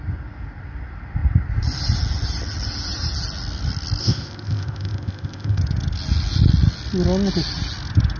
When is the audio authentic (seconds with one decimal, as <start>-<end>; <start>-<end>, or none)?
0.0-4.0; 5.6-8.2